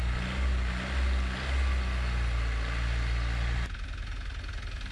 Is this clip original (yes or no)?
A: yes